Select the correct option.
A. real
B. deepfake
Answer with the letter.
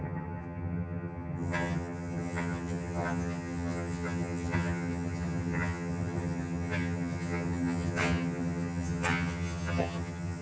B